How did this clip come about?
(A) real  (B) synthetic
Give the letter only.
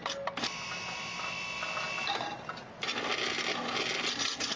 A